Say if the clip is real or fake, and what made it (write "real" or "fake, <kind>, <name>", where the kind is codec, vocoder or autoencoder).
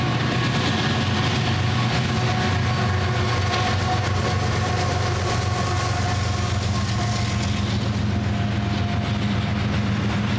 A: real